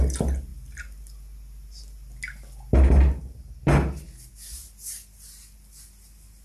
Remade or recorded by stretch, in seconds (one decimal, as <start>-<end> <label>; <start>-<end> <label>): 0.0-6.4 recorded